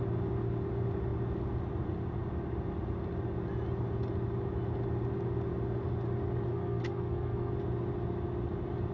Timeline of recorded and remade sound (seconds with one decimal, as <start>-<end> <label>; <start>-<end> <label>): 0.0-6.5 recorded; 6.5-7.5 remade; 7.5-8.9 recorded